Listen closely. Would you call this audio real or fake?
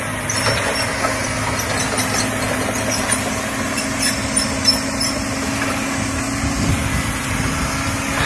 real